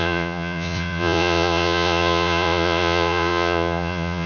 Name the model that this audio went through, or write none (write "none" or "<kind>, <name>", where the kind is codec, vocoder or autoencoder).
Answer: vocoder, Vocos